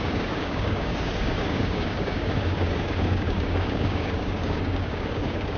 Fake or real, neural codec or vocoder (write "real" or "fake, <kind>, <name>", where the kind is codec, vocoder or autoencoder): fake, codec, DAC